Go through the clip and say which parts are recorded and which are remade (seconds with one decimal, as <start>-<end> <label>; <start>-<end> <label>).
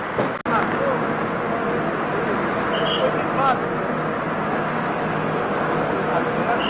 0.0-6.7 recorded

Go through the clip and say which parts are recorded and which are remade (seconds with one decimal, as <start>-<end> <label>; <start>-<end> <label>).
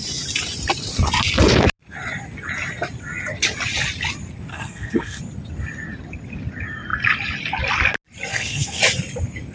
0.0-4.5 recorded; 4.5-5.2 remade; 5.2-8.3 recorded; 8.3-8.8 remade; 8.8-9.5 recorded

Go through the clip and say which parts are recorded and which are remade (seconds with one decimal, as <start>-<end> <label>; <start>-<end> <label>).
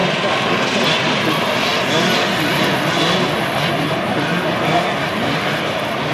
0.0-6.1 recorded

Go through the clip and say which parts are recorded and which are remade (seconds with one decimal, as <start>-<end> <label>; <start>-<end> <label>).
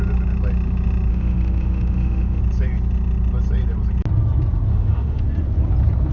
0.0-1.1 recorded; 1.1-2.4 remade; 2.4-4.7 recorded; 4.7-5.2 remade; 5.2-6.1 recorded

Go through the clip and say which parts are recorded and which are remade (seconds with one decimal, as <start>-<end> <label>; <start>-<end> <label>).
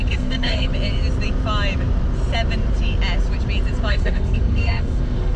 0.0-0.7 remade; 0.7-3.9 recorded; 3.9-5.4 remade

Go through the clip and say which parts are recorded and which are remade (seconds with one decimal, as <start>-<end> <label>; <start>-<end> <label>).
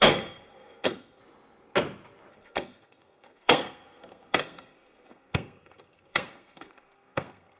0.0-1.2 remade; 1.2-2.3 recorded; 2.3-7.6 remade